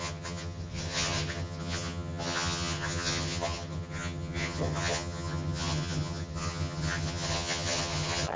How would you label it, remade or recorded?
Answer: remade